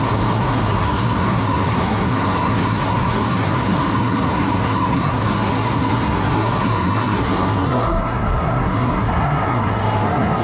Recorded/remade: remade